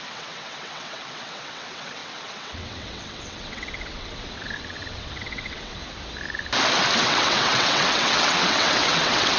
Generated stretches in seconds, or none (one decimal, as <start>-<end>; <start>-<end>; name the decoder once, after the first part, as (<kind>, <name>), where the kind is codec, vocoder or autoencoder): 0.0-5.8 (vocoder, WaveNeXt); 7.0-9.4